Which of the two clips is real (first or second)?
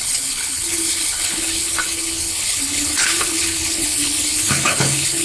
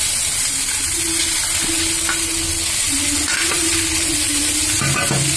second